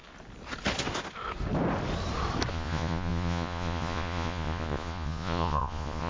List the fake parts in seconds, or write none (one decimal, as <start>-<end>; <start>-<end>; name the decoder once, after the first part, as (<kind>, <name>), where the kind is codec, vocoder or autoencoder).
2.5-6.1 (vocoder, Vocos)